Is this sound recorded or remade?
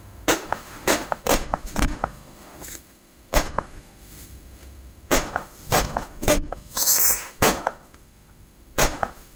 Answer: remade